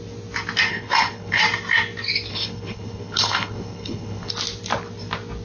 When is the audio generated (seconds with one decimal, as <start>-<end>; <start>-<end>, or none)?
0.7-1.4; 2.3-4.3

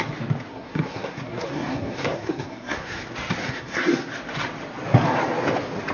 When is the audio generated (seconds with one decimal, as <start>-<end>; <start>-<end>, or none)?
0.5-3.0; 3.4-4.1

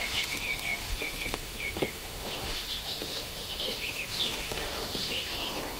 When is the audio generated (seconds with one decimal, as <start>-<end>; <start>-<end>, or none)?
0.0-5.8

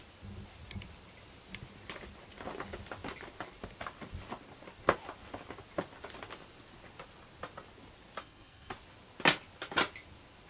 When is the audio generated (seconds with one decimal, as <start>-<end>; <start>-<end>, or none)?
8.2-8.7